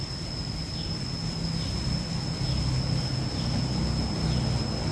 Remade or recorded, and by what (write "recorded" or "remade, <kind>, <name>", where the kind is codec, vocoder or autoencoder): recorded